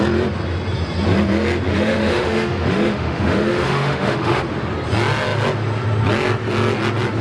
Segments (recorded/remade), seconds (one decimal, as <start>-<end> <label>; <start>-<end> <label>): 0.0-1.7 recorded; 1.7-4.4 remade; 4.4-7.2 recorded

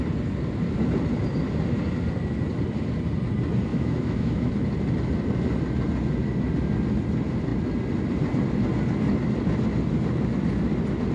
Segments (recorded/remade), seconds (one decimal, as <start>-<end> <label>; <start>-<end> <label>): 0.0-3.7 recorded; 3.7-4.5 remade; 4.5-11.1 recorded

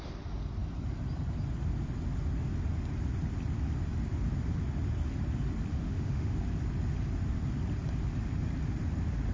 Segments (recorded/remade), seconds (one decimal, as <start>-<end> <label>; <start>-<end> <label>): 0.0-5.7 recorded; 5.7-6.4 remade; 6.4-9.3 recorded

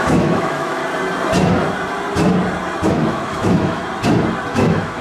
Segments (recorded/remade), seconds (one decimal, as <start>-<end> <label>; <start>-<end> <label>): 0.0-0.8 remade; 0.8-2.9 recorded; 2.9-3.8 remade; 3.8-4.5 recorded; 4.5-5.0 remade

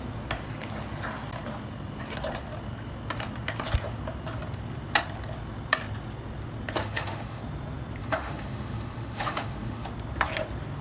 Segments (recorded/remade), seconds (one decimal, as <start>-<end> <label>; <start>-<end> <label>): 0.0-6.8 recorded; 6.8-7.4 remade; 7.4-8.0 recorded; 8.0-9.9 remade; 9.9-10.8 recorded

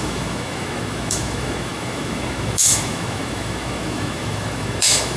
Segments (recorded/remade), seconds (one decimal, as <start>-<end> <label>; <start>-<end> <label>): 0.0-5.2 remade

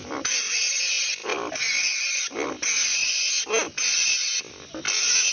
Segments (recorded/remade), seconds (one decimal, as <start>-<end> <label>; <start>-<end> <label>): 0.0-5.3 recorded